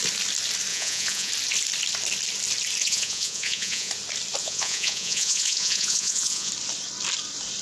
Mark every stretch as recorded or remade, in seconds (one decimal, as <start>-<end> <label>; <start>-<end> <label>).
0.0-0.7 recorded; 0.7-1.3 remade; 1.3-2.8 recorded; 2.8-3.9 remade; 3.9-4.4 recorded; 4.4-6.5 remade; 6.5-7.6 recorded